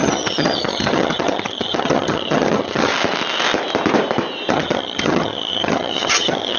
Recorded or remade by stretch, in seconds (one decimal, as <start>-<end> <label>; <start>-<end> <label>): 0.0-2.9 remade; 2.9-4.5 recorded; 4.5-6.6 remade